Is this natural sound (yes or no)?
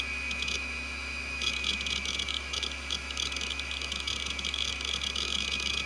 no